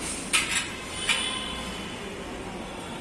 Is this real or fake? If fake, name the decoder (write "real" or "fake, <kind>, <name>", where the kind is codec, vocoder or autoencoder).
real